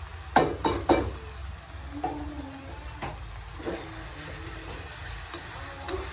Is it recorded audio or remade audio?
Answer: recorded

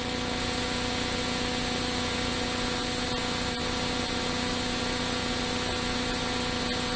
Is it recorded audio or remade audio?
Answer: recorded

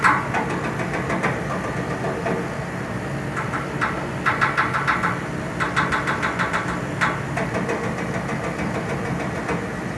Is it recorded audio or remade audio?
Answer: recorded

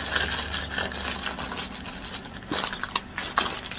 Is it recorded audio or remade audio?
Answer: recorded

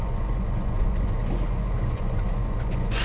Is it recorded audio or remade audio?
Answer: remade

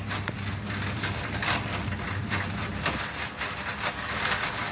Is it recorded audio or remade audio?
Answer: recorded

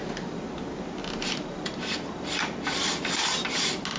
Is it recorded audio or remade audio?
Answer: recorded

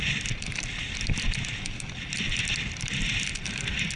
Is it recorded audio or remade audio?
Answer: recorded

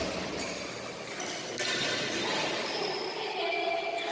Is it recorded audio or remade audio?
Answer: recorded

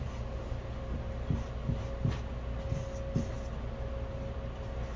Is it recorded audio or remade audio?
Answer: recorded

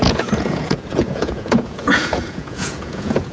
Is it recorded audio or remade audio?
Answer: remade